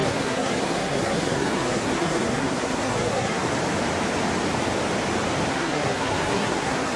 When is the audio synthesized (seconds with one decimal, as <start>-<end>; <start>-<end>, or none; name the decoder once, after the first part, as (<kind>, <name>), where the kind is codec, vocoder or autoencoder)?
0.0-3.4 (codec, SNAC); 5.5-7.0